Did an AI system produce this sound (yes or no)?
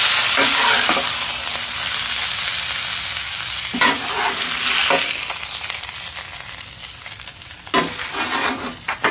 no